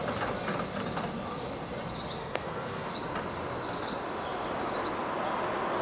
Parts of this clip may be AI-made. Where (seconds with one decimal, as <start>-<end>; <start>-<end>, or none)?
2.2-2.9